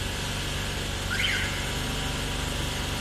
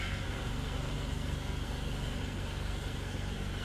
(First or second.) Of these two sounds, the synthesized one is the second